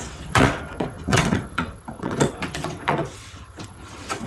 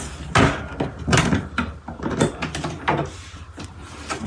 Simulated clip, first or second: first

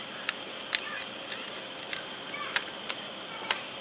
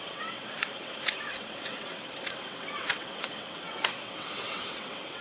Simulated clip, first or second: second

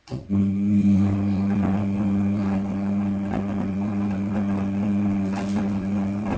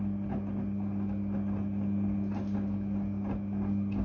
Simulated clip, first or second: first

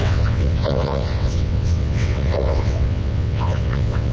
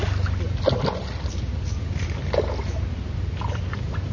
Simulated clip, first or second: first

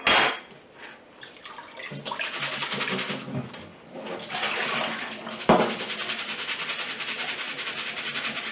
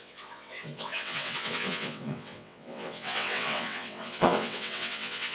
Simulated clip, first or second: second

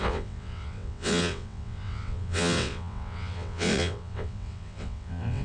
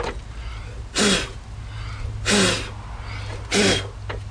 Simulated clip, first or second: first